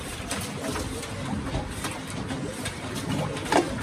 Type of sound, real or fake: real